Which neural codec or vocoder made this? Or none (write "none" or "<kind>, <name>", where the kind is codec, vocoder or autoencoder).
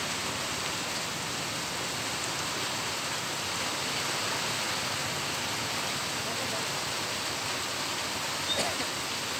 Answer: none